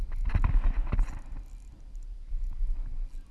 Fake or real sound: real